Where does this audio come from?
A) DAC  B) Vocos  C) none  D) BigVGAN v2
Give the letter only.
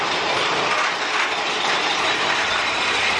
C